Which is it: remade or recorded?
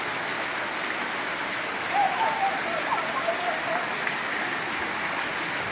recorded